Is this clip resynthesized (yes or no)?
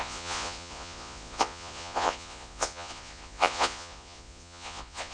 yes